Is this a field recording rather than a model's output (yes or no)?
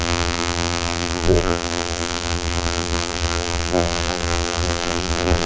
no